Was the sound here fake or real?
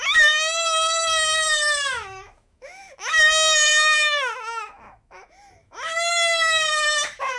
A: fake